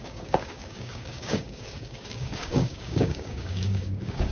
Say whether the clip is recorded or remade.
remade